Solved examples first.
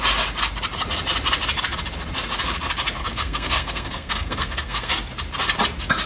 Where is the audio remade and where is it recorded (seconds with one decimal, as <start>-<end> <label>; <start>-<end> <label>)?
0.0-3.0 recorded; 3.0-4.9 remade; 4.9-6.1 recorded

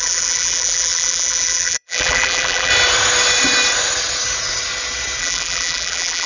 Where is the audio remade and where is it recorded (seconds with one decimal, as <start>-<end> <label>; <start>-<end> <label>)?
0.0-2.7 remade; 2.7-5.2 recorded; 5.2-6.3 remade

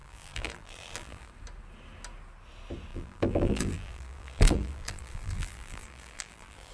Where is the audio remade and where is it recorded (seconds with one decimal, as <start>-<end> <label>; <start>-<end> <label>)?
0.0-1.3 remade; 1.3-2.9 recorded; 2.9-6.7 remade

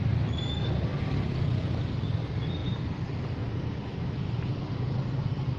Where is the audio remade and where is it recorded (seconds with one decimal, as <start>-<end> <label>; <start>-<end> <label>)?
0.0-0.9 recorded; 0.9-1.9 remade; 1.9-2.6 recorded; 2.6-3.2 remade; 3.2-5.6 recorded

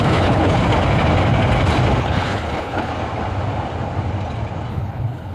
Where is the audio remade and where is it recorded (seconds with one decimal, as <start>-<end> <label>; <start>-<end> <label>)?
0.0-0.6 remade; 0.6-2.0 recorded; 2.0-2.9 remade; 2.9-4.7 recorded; 4.7-5.3 remade

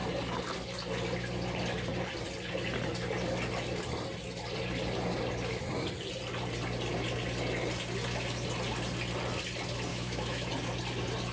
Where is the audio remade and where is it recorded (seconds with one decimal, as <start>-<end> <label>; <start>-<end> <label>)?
0.0-9.9 recorded; 9.9-10.5 remade; 10.5-11.3 recorded

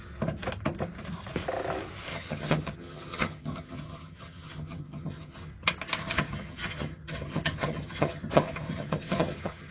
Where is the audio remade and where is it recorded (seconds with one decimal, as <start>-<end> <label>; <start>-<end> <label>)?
0.0-2.1 recorded; 2.1-5.5 remade; 5.5-6.0 recorded; 6.0-9.7 remade